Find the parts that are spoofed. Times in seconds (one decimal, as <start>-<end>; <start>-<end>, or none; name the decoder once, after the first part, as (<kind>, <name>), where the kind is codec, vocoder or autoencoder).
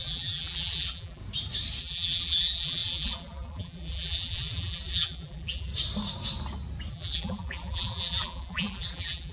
0.0-1.2 (vocoder, BigVGAN v2); 1.8-5.7; 6.9-9.3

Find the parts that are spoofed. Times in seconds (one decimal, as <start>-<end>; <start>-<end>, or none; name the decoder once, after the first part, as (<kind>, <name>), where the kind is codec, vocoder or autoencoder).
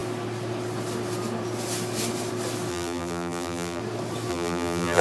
2.7-3.8 (vocoder, BigVGAN v2); 4.3-5.0